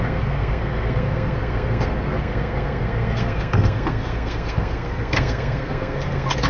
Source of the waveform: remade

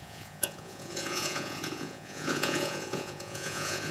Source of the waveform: remade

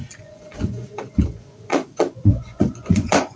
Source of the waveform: remade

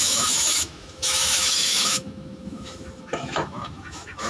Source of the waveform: remade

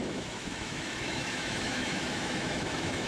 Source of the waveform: remade